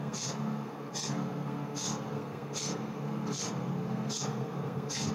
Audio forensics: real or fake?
fake